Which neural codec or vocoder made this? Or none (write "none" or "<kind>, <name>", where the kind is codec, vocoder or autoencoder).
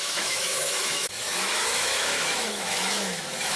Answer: autoencoder, DAC-VAE